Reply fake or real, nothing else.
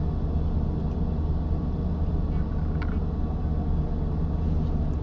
real